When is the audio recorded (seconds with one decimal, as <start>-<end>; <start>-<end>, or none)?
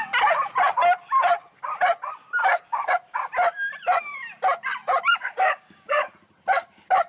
0.0-2.4; 2.9-5.1; 6.1-7.1